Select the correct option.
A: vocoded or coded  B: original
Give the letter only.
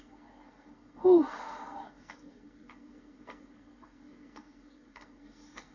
A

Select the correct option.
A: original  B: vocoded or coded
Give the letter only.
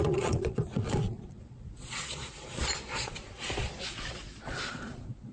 B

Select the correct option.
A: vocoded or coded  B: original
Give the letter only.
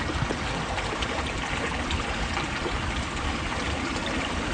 B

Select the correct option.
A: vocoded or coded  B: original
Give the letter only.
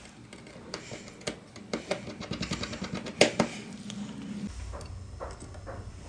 B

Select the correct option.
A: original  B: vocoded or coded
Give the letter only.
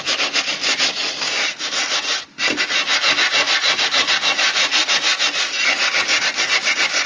A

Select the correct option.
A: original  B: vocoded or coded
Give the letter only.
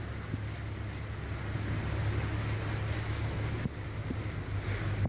A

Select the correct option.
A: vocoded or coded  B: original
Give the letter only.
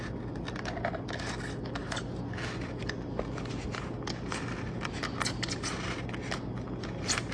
B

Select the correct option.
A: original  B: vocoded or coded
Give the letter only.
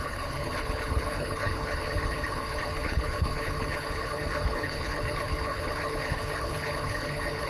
B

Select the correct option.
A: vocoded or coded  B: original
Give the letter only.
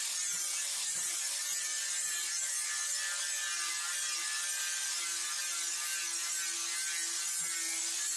B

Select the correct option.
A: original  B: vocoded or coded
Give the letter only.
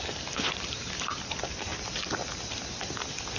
A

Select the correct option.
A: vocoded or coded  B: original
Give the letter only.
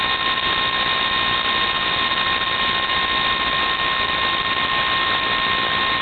B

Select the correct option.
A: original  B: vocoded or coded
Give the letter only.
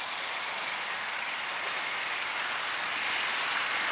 A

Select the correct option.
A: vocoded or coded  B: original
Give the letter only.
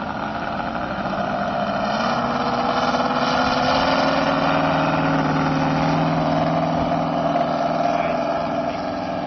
B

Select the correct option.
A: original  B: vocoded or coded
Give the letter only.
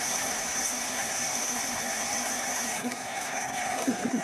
B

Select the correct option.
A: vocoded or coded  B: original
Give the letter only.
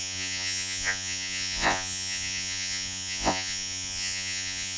A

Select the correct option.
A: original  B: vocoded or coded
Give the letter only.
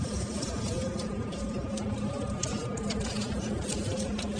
A